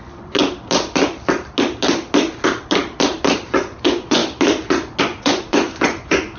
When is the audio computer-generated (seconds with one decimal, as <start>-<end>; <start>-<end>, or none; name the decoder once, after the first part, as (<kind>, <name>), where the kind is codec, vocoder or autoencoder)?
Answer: 0.0-0.4 (vocoder, Vocos); 3.4-4.2; 5.0-6.4

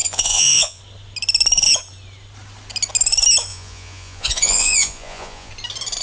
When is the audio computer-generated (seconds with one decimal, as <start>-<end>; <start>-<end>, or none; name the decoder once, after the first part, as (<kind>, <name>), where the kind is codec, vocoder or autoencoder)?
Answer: 0.0-0.8 (vocoder, Vocos); 3.5-5.5

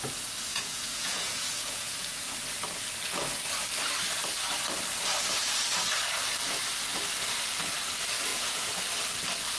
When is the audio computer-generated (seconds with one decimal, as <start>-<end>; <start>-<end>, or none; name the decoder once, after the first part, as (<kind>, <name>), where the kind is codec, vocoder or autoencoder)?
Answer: 0.5-2.2 (vocoder, Vocos); 8.3-8.8

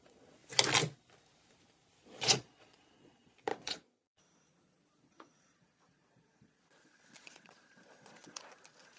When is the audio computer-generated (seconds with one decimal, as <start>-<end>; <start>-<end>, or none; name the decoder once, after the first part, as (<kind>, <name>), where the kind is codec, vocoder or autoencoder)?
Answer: 0.0-0.4 (vocoder, Vocos); 2.0-9.0